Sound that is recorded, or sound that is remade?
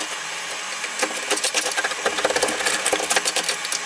recorded